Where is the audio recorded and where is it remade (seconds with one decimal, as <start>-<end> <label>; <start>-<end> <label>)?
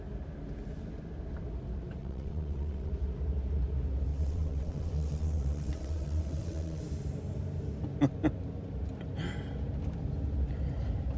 0.0-2.0 recorded; 2.0-2.9 remade; 2.9-4.1 recorded; 4.1-6.8 remade; 6.8-11.2 recorded